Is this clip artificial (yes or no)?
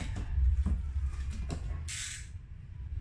no